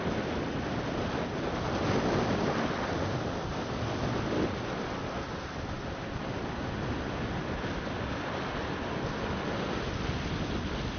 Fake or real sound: real